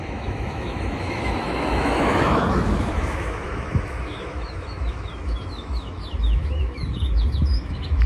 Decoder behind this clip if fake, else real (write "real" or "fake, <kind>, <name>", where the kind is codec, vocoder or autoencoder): fake, autoencoder, DAC-VAE